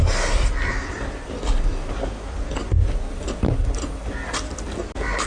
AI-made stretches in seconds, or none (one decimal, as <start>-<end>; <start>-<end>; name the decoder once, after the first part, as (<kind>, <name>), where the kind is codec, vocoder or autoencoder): none